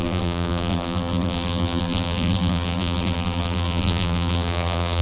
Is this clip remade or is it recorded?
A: remade